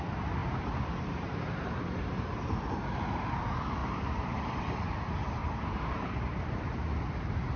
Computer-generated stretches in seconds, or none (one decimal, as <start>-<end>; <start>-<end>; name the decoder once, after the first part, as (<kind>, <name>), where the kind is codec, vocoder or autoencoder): 0.4-3.4 (vocoder, BigVGAN v2); 3.8-4.6; 5.4-7.6